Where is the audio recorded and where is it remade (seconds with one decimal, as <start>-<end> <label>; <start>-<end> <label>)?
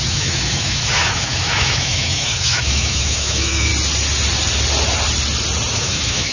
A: 0.0-3.7 remade; 3.7-5.7 recorded; 5.7-6.3 remade